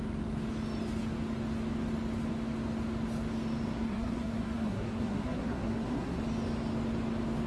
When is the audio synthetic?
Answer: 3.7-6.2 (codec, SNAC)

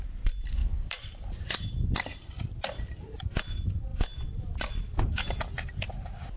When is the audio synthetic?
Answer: 0.6-1.6 (vocoder, BigVGAN v2)